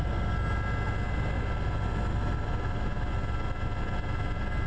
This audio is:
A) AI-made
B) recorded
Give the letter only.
B